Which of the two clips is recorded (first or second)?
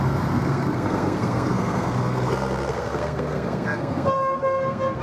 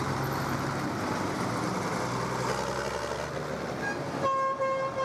second